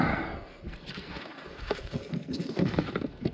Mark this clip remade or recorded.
remade